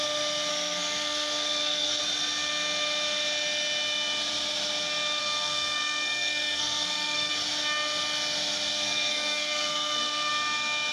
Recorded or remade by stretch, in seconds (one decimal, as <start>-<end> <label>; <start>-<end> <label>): 0.0-0.5 recorded; 0.5-2.0 remade; 2.0-5.2 recorded; 5.2-7.3 remade; 7.3-8.7 recorded; 8.7-10.3 remade; 10.3-10.9 recorded